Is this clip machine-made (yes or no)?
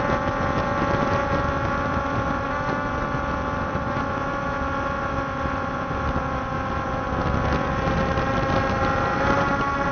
no